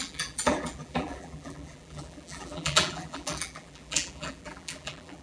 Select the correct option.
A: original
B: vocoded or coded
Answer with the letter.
B